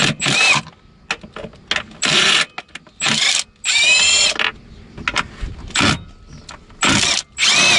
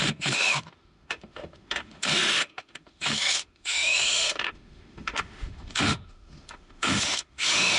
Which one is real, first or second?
first